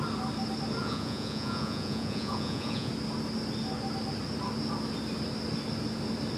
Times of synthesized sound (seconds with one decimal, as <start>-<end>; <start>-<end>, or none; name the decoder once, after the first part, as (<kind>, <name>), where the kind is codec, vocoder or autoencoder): 0.8-2.9 (vocoder, Vocos)